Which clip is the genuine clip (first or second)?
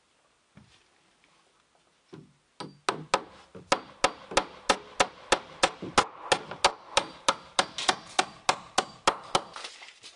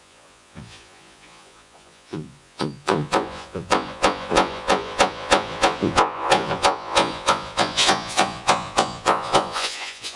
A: first